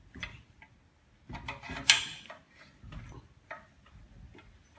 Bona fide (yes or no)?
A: yes